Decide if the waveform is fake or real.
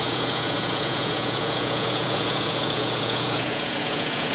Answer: fake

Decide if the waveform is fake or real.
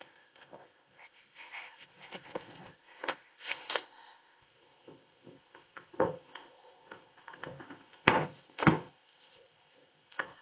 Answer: fake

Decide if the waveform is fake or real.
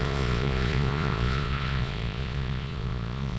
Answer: fake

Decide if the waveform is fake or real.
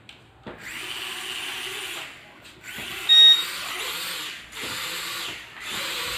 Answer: real